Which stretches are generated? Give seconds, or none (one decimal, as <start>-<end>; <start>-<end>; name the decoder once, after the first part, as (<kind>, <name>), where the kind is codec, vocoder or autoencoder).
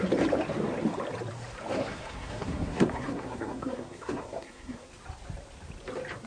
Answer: 1.8-4.9 (codec, SNAC)